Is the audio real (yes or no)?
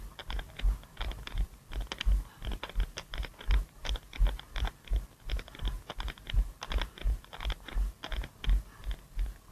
yes